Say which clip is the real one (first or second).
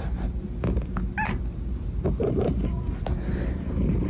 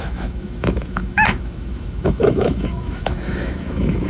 first